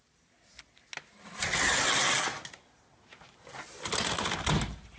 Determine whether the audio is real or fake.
real